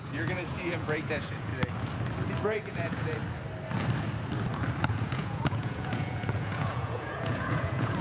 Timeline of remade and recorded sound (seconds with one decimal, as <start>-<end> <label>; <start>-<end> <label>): 0.0-1.5 remade; 1.5-2.3 recorded; 2.3-3.2 remade; 3.2-4.9 recorded; 4.9-8.0 remade